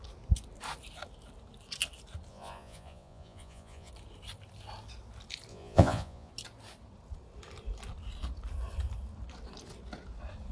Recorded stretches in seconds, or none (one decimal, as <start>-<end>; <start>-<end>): 0.0-2.3; 3.9-5.5; 6.3-10.5